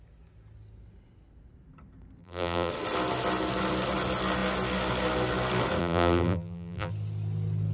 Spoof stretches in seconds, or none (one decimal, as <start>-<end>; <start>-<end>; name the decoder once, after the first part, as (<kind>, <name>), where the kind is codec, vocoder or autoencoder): 2.2-2.7 (vocoder, BigVGAN v2); 5.8-6.9